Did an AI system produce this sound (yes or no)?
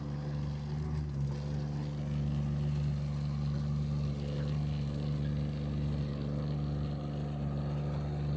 no